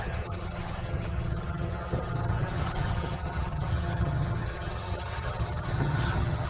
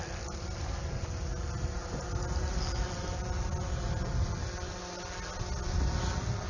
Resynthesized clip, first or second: first